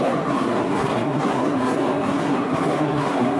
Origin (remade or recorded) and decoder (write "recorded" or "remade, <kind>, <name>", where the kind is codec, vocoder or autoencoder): remade, codec, SNAC